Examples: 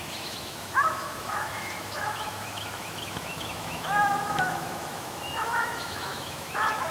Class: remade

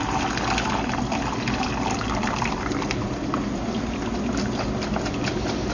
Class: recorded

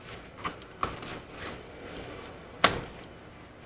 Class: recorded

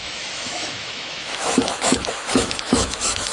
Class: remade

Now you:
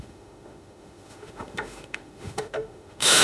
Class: remade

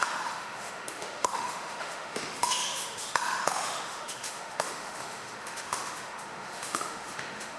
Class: remade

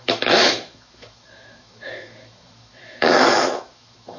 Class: remade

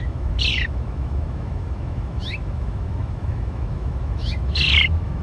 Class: remade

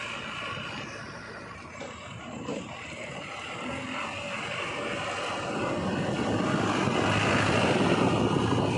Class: recorded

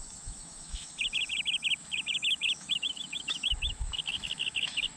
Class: remade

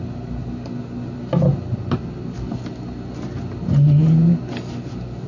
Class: recorded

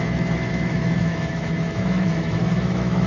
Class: remade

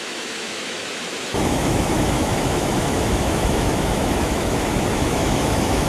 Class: remade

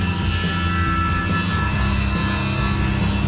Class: recorded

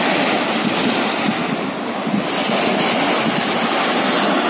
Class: recorded